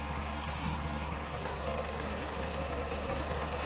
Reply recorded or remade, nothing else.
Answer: remade